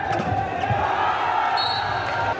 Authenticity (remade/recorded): recorded